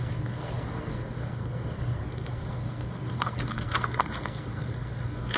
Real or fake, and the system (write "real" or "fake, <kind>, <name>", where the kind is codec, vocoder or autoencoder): fake, codec, SNAC